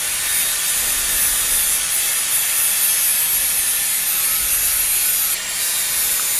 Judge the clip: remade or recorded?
recorded